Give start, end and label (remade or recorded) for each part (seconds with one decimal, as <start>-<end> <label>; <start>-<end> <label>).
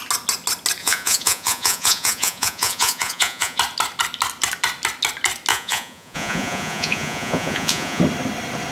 0.0-0.8 recorded; 0.8-3.6 remade; 3.6-5.5 recorded; 5.5-8.0 remade; 8.0-8.7 recorded